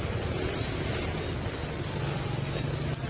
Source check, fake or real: real